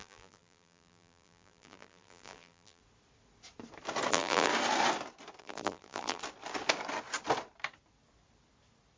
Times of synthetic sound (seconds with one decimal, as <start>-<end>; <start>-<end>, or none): 0.0-2.8; 4.1-4.5; 5.4-6.2